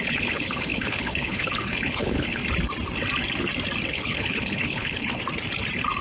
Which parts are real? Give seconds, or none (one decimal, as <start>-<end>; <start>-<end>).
2.4-3.9; 5.2-6.0